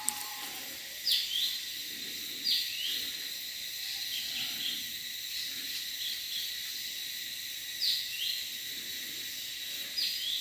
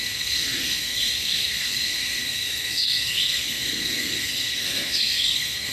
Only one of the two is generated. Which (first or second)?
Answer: second